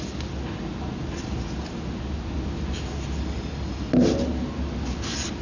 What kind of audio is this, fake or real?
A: real